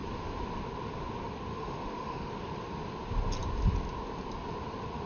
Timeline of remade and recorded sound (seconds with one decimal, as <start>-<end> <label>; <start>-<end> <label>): 0.0-1.5 recorded; 1.5-2.3 remade; 2.3-5.1 recorded